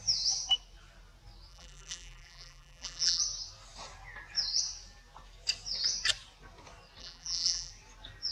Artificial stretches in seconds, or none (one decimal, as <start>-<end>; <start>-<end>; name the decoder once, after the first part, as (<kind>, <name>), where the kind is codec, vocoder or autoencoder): 1.5-3.2 (vocoder, BigVGAN v2); 7.0-7.7